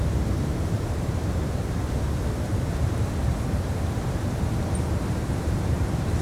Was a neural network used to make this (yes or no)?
yes